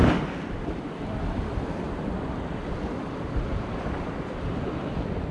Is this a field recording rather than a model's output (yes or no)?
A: yes